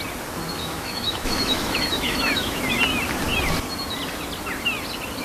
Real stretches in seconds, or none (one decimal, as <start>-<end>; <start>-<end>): 0.0-0.6; 2.7-5.2